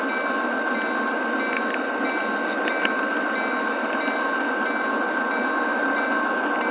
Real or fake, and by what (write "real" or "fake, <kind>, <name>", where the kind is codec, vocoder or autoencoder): real